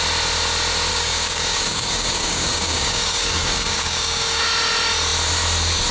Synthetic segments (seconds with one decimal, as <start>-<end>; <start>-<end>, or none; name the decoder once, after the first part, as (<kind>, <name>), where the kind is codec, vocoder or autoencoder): 0.9-4.4 (codec, DAC)